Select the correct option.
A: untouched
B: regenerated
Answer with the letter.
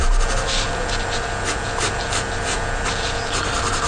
A